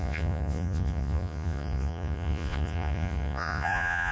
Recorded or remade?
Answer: remade